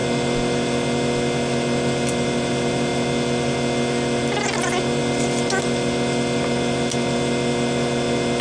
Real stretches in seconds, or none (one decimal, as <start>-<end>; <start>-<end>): 0.0-8.4